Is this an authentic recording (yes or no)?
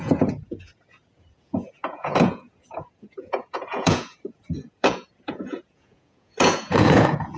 no